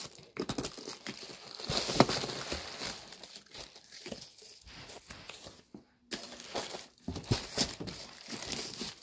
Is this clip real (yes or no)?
yes